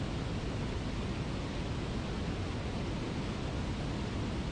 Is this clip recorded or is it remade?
recorded